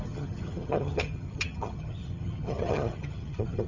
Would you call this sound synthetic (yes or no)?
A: yes